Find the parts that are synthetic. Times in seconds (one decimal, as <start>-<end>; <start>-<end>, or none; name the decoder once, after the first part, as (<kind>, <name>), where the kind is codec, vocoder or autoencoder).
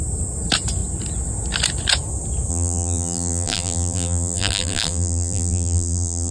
2.5-6.3 (vocoder, BigVGAN v2)